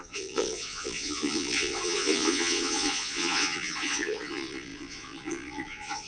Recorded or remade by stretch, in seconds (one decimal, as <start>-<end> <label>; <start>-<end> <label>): 0.0-6.1 remade